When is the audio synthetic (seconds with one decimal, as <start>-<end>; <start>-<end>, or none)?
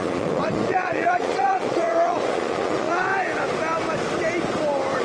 0.0-3.1